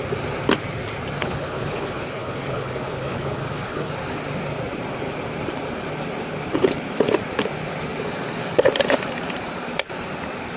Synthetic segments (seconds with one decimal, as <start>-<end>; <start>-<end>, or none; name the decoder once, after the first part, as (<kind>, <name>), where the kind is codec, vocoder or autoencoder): 1.2-3.9 (codec, HILCodec)